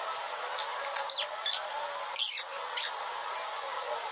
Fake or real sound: real